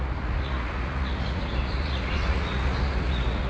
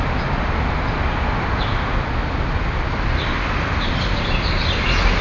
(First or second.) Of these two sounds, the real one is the second